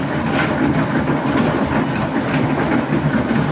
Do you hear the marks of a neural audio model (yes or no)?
no